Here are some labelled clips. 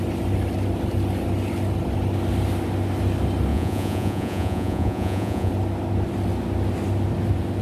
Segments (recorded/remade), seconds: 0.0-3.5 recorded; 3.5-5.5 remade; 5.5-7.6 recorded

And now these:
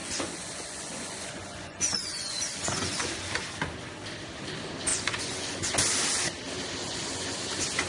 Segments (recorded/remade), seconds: 0.0-3.1 remade; 3.1-4.9 recorded; 4.9-5.7 remade; 5.7-6.8 recorded; 6.8-7.4 remade; 7.4-7.9 recorded